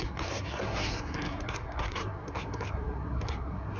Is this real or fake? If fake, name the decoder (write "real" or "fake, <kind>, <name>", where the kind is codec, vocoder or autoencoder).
fake, codec, SNAC